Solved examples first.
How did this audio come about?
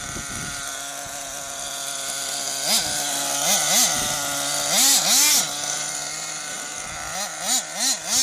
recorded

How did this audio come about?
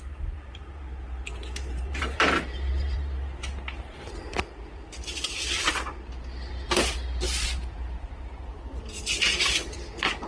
remade